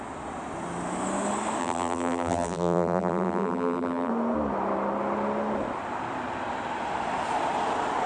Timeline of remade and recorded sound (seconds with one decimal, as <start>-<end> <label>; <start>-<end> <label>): 0.0-1.6 recorded; 1.6-4.1 remade; 4.1-8.1 recorded